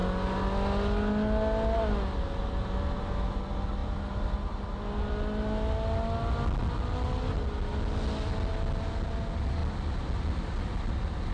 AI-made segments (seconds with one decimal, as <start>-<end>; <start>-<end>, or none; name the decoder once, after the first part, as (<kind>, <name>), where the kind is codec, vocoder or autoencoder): none